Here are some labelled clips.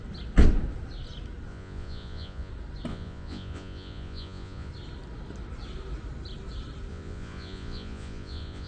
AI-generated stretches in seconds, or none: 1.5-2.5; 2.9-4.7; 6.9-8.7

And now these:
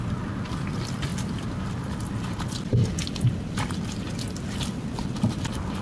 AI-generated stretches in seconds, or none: 1.1-2.2

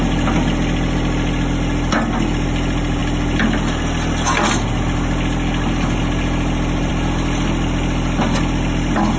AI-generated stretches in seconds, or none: none